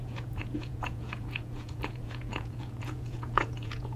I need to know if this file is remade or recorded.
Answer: remade